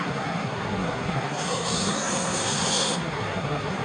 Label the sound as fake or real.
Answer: fake